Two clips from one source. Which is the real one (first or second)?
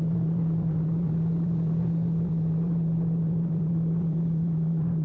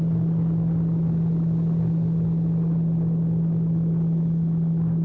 second